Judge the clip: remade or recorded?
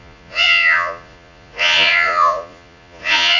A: remade